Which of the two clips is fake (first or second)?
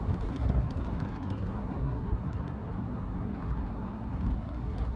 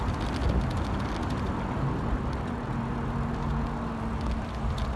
first